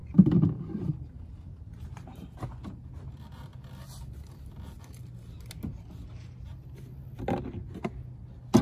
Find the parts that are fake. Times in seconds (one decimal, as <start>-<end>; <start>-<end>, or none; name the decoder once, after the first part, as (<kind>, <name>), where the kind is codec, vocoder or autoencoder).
0.0-3.1 (vocoder, BigVGAN v2)